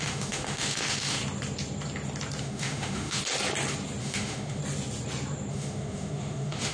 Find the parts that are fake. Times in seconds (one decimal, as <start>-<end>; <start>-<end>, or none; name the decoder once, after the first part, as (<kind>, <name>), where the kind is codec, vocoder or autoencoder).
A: 0.0-1.2 (autoencoder, DAC-VAE); 2.4-3.2; 4.0-4.6; 5.5-6.7